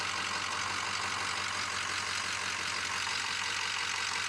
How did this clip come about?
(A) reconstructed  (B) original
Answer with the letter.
B